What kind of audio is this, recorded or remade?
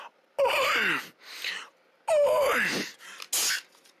recorded